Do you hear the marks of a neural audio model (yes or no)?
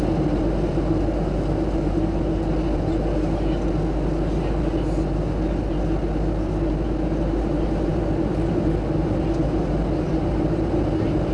no